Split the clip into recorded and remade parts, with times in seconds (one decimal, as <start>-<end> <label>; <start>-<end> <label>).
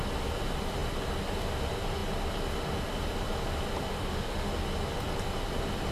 0.0-3.9 recorded; 3.9-4.5 remade; 4.5-5.9 recorded